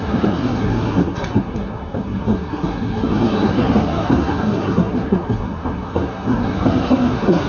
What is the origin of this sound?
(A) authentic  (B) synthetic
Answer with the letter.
B